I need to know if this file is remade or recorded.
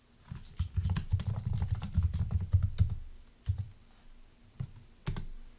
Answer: recorded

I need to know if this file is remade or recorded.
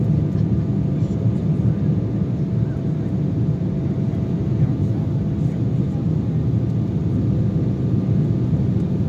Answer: recorded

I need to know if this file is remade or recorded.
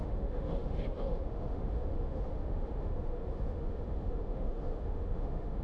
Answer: remade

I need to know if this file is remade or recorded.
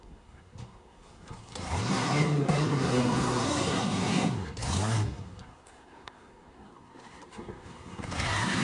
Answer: remade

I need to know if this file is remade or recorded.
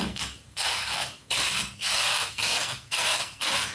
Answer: remade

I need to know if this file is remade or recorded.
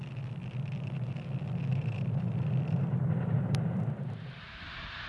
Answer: recorded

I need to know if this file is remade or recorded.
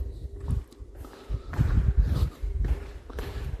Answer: remade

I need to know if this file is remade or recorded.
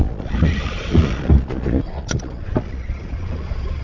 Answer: remade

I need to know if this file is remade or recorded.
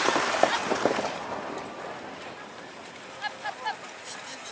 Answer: recorded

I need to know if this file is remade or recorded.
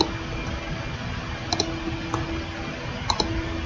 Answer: recorded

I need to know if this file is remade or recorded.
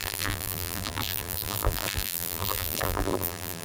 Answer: remade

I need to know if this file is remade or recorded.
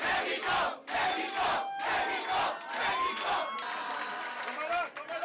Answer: recorded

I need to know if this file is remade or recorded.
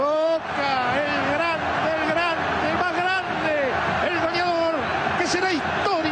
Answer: recorded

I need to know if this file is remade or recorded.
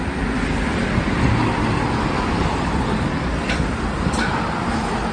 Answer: recorded